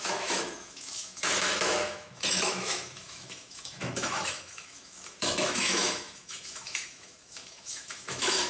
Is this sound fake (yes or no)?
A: yes